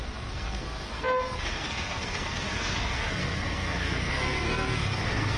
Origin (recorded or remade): remade